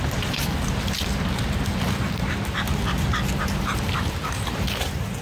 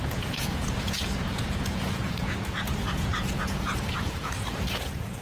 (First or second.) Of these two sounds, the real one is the first